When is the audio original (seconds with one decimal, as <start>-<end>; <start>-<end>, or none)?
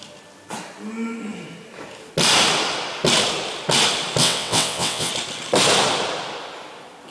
0.0-4.2; 5.1-7.1